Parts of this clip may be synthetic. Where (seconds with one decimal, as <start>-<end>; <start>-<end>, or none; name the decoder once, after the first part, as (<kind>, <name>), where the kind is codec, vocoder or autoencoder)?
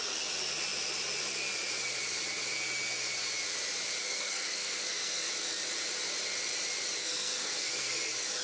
4.0-5.3 (codec, SNAC); 7.0-8.0